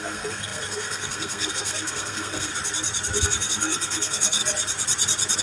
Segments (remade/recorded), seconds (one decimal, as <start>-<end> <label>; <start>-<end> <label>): 0.0-2.5 remade; 2.5-3.2 recorded; 3.2-4.4 remade; 4.4-5.4 recorded